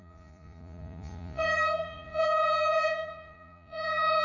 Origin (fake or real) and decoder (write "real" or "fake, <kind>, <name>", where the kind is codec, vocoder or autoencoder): fake, vocoder, Vocos